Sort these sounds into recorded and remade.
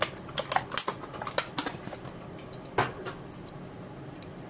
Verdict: recorded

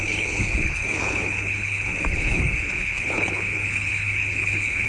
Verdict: remade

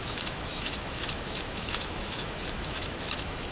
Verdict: remade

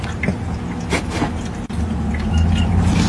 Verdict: recorded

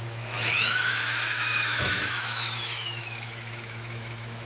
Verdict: remade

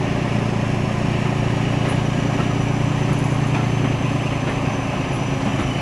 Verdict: recorded